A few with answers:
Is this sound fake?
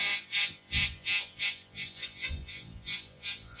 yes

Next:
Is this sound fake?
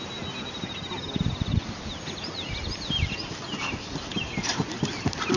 no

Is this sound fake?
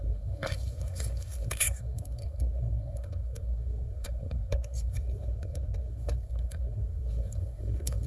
yes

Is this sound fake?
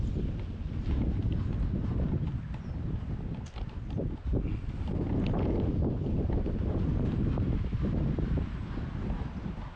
no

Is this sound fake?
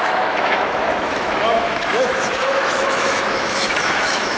yes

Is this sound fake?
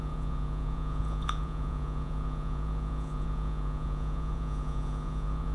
yes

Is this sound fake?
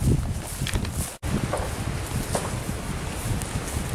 no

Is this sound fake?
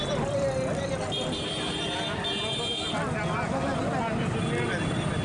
no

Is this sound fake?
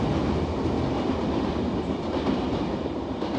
no